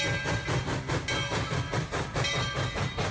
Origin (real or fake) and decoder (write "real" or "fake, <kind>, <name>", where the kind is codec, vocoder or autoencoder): real